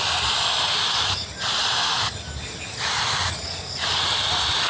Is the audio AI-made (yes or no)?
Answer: no